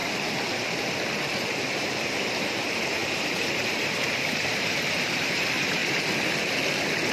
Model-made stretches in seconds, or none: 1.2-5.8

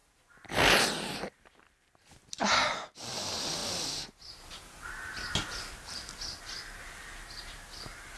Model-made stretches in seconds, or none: none

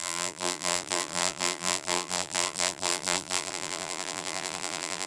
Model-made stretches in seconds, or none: 0.0-5.1

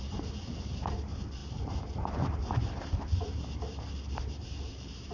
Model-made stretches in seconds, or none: 0.0-5.1

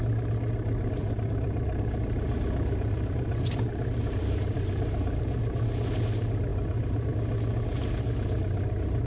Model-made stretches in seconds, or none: 1.0-5.2; 6.5-7.1

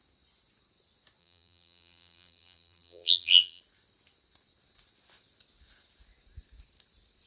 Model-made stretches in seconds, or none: 1.2-3.6